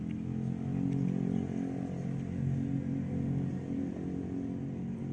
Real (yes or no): yes